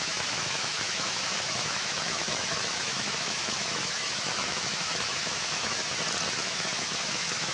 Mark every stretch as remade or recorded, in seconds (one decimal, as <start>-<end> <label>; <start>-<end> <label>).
0.0-5.8 remade; 5.8-6.4 recorded; 6.4-7.5 remade